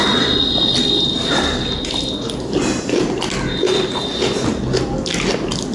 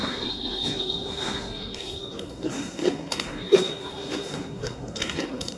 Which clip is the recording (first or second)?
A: first